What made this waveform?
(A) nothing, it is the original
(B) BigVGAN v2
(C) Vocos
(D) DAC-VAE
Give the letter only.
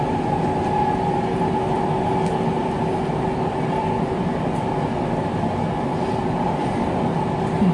A